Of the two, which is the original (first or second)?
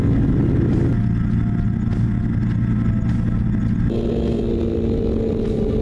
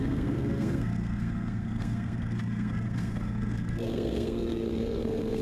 first